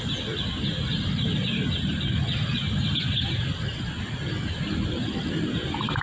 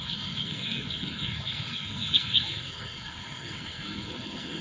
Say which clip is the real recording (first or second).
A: first